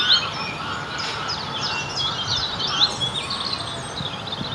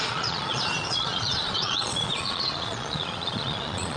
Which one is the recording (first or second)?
first